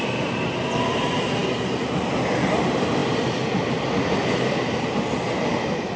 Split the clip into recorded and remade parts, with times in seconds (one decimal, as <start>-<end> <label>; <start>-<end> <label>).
0.0-6.0 recorded